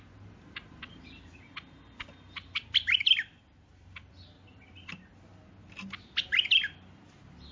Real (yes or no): yes